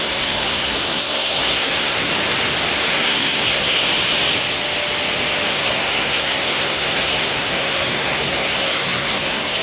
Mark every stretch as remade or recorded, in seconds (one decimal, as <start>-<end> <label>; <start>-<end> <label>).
0.0-2.1 remade; 2.1-2.9 recorded; 2.9-3.9 remade; 3.9-5.5 recorded; 5.5-9.6 remade